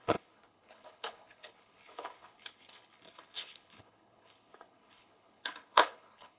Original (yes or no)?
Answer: no